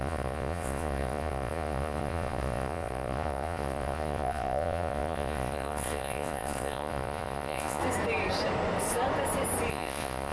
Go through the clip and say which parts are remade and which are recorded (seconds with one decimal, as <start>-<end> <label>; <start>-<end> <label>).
0.0-7.8 remade; 7.8-9.7 recorded; 9.7-10.3 remade